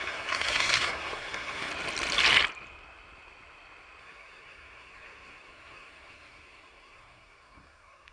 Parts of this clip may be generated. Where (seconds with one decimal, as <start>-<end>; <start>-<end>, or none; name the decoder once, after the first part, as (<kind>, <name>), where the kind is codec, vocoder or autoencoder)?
0.0-1.7 (codec, SNAC); 4.0-8.1